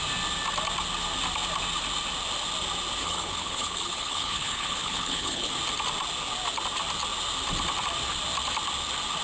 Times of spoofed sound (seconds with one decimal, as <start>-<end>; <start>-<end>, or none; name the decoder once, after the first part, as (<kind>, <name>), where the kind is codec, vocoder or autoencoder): 3.0-5.5 (codec, HILCodec)